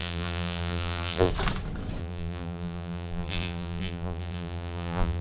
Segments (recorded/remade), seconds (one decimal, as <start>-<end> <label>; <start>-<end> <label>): 0.0-1.3 remade; 1.3-2.0 recorded; 2.0-5.2 remade